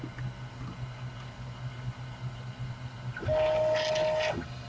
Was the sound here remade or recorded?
recorded